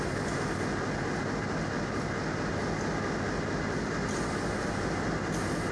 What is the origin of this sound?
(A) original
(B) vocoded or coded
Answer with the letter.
A